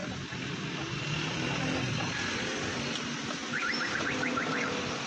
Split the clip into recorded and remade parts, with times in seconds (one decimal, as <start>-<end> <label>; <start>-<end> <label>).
0.0-3.4 recorded; 3.4-3.9 remade; 3.9-5.1 recorded